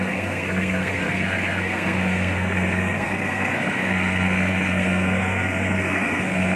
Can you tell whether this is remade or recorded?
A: remade